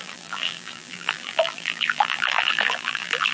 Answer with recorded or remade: remade